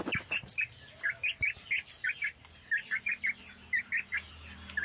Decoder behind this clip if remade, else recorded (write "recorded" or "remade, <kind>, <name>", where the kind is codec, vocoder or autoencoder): recorded